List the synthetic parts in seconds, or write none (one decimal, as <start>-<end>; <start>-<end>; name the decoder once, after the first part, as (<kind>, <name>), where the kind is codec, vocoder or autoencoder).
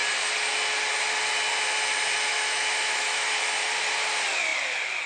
2.3-3.4 (autoencoder, DAC-VAE)